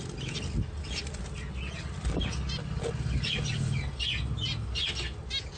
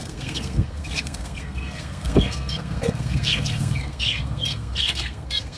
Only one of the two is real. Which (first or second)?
first